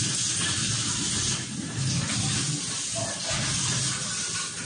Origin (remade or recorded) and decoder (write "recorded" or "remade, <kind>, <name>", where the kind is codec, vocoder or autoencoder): recorded